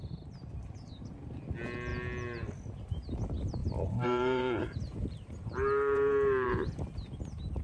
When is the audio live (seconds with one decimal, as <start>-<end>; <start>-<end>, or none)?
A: 0.0-3.6; 6.5-7.6